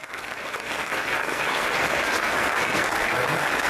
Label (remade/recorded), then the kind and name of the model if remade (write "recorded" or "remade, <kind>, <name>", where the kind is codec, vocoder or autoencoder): remade, codec, SNAC